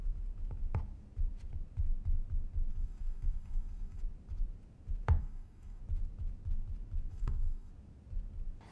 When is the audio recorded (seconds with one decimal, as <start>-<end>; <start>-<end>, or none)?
0.0-2.7; 4.0-5.2; 5.8-7.1; 7.7-8.7